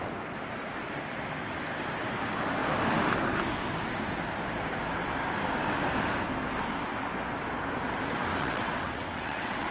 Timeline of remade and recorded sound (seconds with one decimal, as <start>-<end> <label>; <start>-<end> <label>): 0.0-8.4 recorded; 8.4-9.7 remade